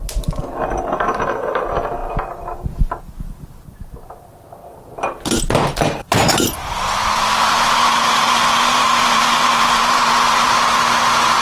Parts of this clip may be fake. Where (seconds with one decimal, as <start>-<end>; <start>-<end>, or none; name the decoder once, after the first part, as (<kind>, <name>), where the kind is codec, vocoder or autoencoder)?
6.6-10.5 (vocoder, BigVGAN v2)